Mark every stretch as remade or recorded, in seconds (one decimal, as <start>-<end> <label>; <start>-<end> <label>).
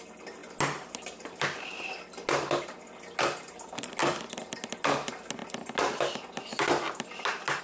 0.0-7.6 recorded